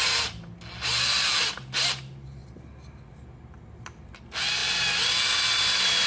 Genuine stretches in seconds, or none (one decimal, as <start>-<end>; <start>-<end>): 0.0-6.1